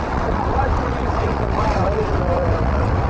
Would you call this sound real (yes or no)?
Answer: no